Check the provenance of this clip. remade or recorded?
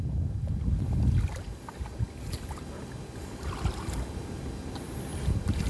recorded